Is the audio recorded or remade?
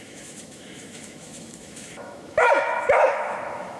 remade